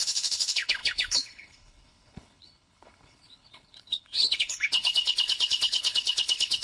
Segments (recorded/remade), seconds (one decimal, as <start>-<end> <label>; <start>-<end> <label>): 0.0-6.6 remade